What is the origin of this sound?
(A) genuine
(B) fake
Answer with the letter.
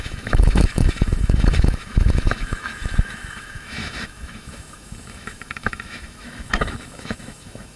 B